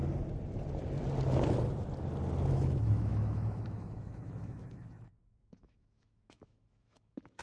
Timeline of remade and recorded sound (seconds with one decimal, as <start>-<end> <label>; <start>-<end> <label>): 0.0-2.5 recorded; 2.5-7.4 remade